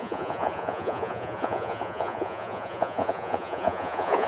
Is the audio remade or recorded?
remade